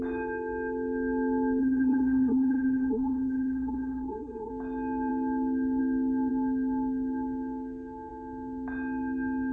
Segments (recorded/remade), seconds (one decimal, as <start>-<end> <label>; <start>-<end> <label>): 0.0-1.6 recorded; 1.6-4.5 remade; 4.5-9.5 recorded